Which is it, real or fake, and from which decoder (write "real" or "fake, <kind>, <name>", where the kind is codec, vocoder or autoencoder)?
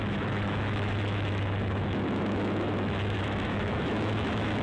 fake, autoencoder, DAC-VAE